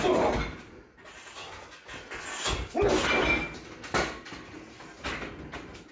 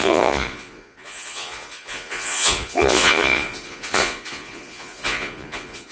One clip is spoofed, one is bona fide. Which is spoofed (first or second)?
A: second